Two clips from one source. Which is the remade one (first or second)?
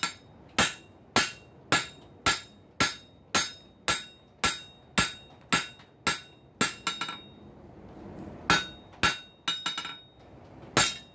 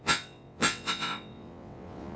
second